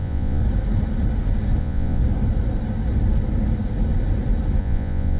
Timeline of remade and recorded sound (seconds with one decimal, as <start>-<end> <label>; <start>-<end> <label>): 0.0-0.4 remade; 0.4-1.6 recorded; 1.6-2.0 remade; 2.0-4.6 recorded; 4.6-5.2 remade